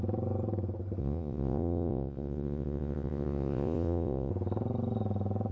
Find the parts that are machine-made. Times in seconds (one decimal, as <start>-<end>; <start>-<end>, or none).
1.0-4.3